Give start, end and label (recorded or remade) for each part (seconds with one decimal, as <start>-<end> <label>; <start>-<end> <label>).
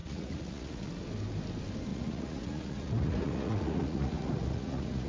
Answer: 0.0-0.9 remade; 0.9-1.9 recorded; 1.9-5.1 remade